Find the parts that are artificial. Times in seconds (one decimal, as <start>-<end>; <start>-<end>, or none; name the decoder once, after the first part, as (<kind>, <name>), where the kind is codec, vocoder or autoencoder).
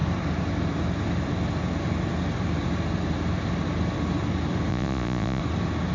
4.7-5.4 (vocoder, Vocos)